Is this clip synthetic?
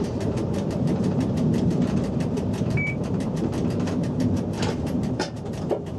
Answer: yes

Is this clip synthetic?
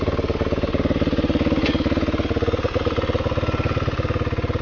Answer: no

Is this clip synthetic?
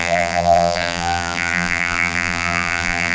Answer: yes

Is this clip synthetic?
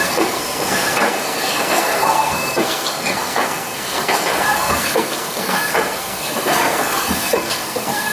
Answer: yes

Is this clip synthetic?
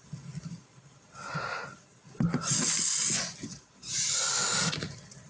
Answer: no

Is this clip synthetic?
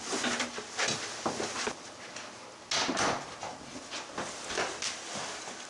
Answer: no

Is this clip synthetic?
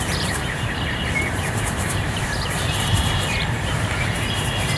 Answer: yes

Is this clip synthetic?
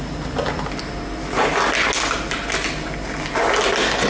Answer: no